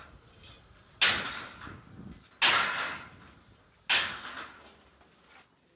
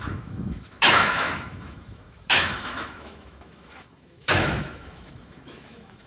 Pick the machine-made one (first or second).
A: second